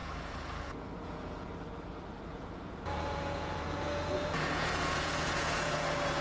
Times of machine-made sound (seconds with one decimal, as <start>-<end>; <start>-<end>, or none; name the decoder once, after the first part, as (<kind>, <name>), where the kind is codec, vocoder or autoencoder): 0.0-1.5 (vocoder, Vocos); 2.3-6.2